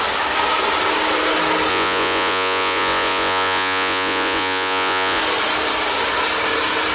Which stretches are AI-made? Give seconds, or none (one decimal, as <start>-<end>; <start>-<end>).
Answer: 1.7-5.2